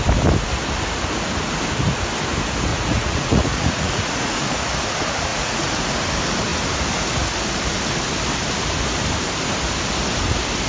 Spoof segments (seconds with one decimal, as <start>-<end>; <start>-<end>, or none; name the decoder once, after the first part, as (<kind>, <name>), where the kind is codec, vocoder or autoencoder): 2.7-4.5 (vocoder, Vocos); 5.3-5.8